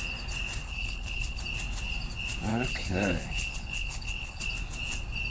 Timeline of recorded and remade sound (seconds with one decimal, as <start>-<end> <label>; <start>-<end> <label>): 0.0-0.6 recorded; 0.6-1.4 remade; 1.4-2.5 recorded; 2.5-4.4 remade; 4.4-5.3 recorded

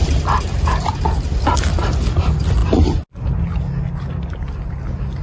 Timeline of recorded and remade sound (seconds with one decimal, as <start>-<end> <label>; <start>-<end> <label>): 0.0-5.2 recorded